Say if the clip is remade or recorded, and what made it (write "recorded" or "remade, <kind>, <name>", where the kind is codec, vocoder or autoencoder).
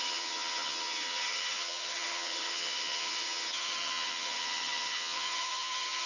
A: remade, vocoder, HiFi-GAN